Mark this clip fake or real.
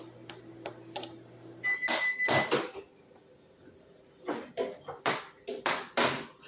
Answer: real